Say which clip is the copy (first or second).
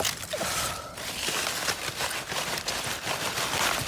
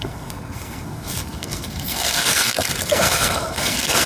second